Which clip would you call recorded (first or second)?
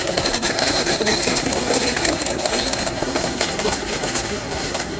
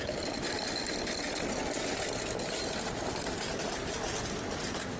second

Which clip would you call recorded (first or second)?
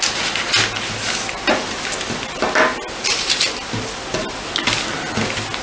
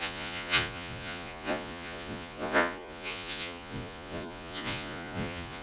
first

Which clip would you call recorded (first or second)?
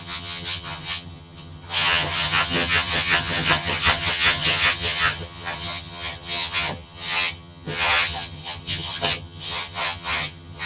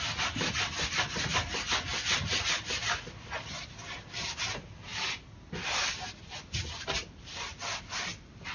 second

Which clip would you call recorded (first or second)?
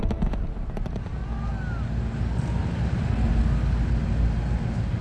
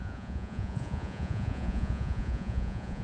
first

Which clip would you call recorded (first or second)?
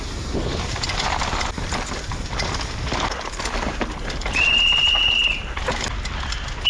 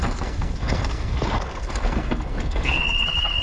first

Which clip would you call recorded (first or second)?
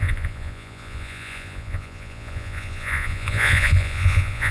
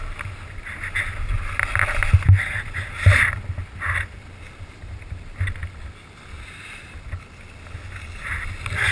second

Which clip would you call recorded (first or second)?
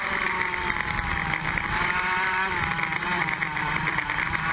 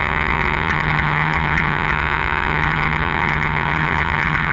first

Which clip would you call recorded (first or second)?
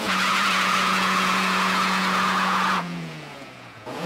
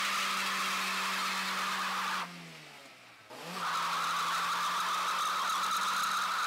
second